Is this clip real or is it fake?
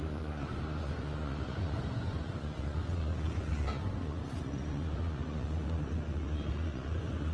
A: fake